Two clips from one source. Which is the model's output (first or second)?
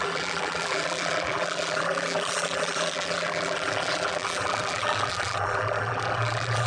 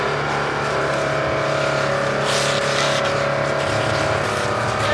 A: first